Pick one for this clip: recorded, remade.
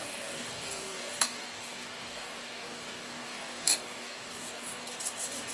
remade